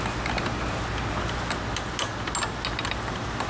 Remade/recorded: recorded